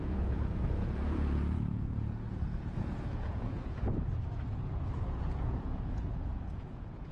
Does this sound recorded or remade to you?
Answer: remade